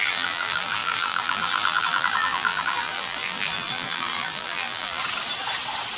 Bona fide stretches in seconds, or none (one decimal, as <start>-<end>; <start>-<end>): 5.0-6.0